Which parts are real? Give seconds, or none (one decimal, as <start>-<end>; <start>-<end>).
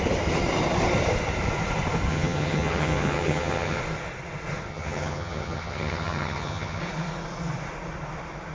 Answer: 0.0-2.1; 3.8-4.7; 6.8-8.5